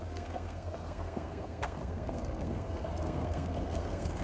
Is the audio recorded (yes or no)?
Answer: no